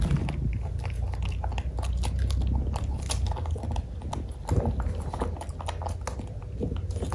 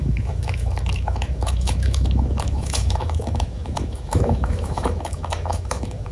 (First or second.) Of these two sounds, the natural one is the first